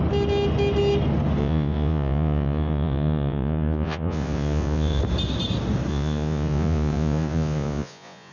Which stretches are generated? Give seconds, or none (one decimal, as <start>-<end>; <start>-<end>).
1.4-5.0; 5.9-8.3